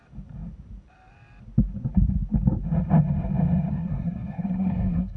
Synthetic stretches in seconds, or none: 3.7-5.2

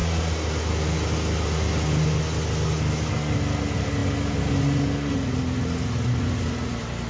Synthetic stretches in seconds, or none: none

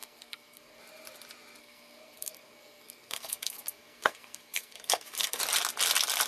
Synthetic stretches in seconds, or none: 0.0-0.8; 1.6-5.4

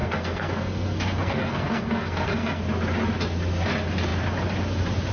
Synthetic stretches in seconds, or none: 0.0-2.6

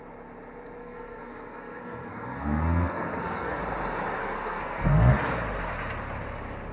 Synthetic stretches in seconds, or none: 0.8-3.6; 4.2-5.1

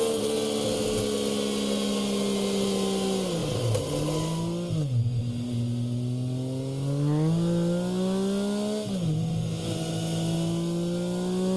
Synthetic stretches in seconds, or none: none

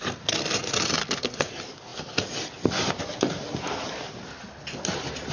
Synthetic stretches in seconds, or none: 1.0-1.5

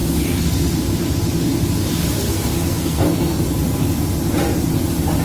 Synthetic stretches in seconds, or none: 2.3-3.5